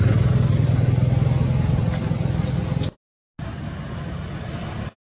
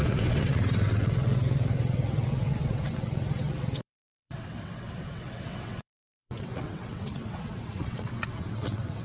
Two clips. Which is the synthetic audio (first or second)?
second